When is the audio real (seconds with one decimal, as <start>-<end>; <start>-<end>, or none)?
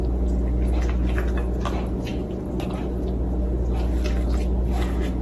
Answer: 0.0-5.2